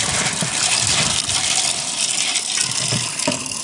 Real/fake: real